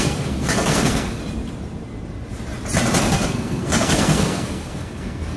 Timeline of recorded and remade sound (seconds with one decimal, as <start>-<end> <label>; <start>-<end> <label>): 0.0-1.2 remade; 1.2-3.0 recorded; 3.0-5.4 remade